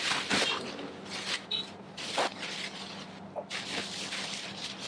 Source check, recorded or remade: recorded